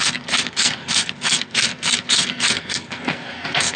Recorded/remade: remade